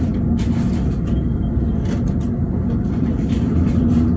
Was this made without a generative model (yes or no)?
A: yes